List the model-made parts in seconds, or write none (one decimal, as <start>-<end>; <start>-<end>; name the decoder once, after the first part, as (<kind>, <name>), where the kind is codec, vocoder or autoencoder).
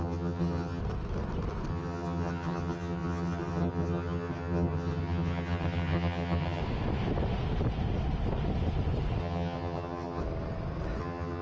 0.0-0.8 (vocoder, HiFi-GAN); 1.7-6.6; 9.2-10.2; 11.0-11.4